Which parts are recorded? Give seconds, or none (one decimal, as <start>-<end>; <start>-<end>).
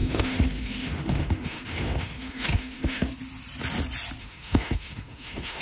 3.1-4.2